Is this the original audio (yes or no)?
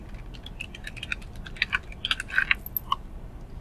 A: yes